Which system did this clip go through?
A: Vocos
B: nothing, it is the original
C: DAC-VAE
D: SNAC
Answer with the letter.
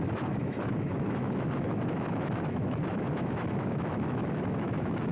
C